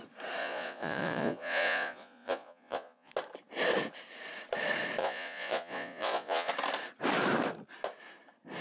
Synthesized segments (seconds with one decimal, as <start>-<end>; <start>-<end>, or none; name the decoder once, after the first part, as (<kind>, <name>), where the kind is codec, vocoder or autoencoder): 0.4-3.1 (vocoder, Vocos); 5.0-6.5